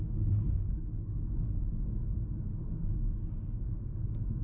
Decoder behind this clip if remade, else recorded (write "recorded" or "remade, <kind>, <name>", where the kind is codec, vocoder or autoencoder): remade, codec, DAC